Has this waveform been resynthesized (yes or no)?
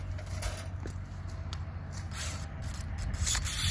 no